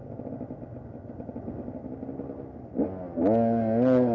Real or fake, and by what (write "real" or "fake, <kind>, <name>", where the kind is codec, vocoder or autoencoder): real